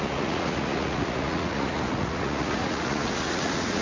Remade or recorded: remade